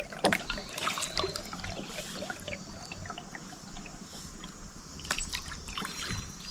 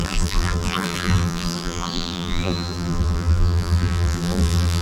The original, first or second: first